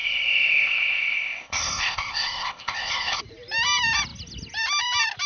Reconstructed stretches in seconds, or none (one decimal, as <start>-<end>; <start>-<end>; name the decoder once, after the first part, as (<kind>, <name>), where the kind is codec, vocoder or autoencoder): 0.0-3.2 (codec, ZipCodec)